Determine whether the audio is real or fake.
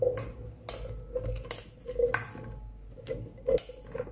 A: real